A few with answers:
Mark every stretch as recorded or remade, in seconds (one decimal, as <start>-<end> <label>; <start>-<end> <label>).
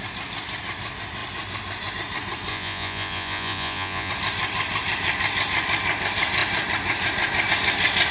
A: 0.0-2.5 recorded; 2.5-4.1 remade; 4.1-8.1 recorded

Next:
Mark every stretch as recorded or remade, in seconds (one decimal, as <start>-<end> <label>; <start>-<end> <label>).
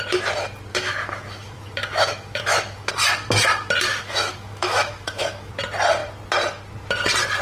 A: 0.0-0.7 recorded; 0.7-2.9 remade; 2.9-3.9 recorded; 3.9-5.5 remade; 5.5-7.4 recorded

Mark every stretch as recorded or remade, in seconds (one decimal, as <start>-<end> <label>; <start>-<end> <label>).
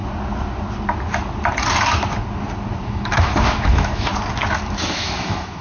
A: 0.0-2.8 recorded; 2.8-4.1 remade; 4.1-4.6 recorded; 4.6-5.6 remade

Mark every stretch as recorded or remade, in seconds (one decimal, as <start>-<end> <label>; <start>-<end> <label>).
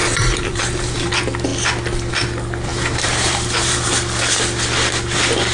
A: 0.0-1.1 remade; 1.1-2.7 recorded; 2.7-3.9 remade; 3.9-5.5 recorded